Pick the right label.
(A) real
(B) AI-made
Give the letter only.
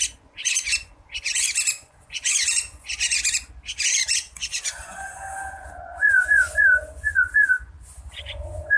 B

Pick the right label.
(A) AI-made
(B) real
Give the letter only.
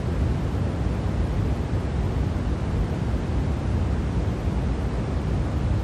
B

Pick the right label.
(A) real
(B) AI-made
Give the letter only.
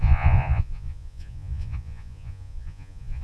B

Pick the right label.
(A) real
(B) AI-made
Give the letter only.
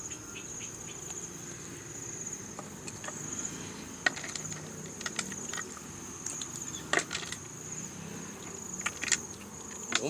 A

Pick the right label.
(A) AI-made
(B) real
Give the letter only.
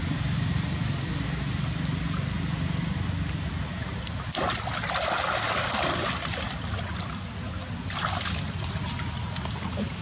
B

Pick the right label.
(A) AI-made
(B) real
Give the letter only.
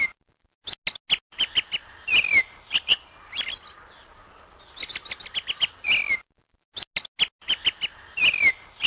B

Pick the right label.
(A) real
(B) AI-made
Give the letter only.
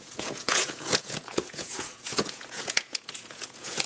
B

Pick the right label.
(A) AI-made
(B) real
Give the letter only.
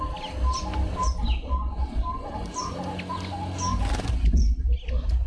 B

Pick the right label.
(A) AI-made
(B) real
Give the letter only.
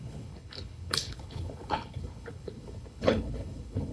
A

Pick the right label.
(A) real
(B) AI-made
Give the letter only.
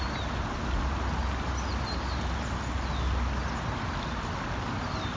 A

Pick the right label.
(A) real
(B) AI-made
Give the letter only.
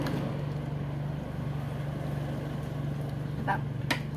A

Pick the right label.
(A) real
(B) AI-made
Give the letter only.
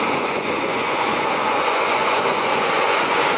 B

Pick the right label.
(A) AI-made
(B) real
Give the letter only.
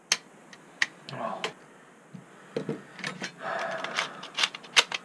B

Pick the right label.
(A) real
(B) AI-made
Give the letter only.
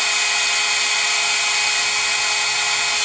A